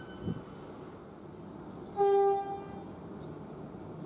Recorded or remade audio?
recorded